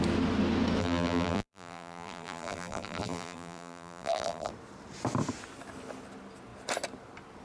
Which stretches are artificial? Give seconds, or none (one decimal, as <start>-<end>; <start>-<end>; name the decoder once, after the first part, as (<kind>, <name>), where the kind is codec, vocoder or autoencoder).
0.8-4.5 (vocoder, BigVGAN v2)